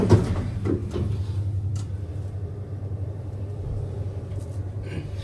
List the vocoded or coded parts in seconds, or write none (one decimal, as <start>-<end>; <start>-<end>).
none